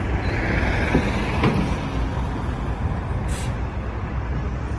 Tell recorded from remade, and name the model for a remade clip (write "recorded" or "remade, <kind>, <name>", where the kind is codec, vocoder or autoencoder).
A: recorded